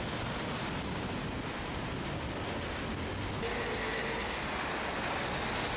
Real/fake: real